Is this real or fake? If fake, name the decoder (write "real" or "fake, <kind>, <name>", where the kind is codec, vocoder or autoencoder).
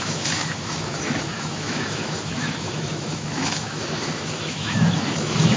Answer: fake, autoencoder, DAC-VAE